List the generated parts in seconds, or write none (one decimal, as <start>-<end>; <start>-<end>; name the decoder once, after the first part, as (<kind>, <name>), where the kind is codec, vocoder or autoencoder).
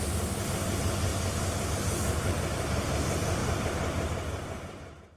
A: none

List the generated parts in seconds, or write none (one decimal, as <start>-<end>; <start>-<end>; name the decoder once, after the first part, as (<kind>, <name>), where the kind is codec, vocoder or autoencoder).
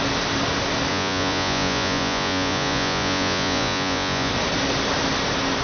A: 0.9-4.3 (vocoder, Vocos)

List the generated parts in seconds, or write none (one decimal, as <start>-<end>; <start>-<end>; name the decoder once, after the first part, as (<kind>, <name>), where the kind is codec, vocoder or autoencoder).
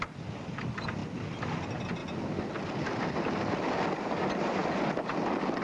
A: none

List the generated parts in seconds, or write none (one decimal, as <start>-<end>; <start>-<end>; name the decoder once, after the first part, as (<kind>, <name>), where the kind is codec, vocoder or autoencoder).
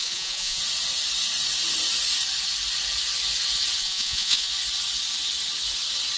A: 0.0-0.6 (vocoder, Vocos); 3.8-4.5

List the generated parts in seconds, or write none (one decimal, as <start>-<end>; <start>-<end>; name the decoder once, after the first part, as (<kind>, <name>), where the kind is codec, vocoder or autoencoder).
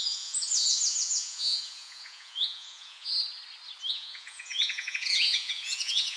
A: 0.0-3.1 (vocoder, Vocos); 3.9-6.2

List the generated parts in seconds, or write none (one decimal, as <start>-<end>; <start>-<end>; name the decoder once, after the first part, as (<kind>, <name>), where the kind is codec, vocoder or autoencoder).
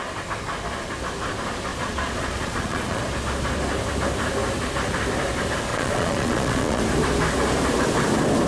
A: 1.7-3.0 (vocoder, Vocos); 5.7-6.8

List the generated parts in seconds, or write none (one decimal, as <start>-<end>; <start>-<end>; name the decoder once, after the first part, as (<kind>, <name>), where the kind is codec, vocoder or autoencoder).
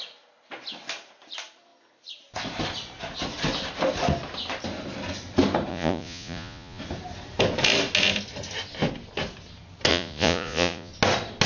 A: 5.7-6.8 (vocoder, Vocos); 9.9-10.9